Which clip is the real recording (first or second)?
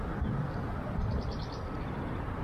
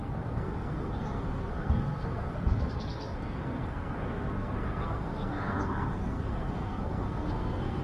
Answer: first